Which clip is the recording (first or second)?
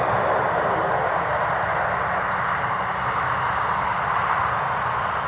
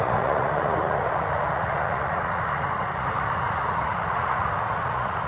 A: first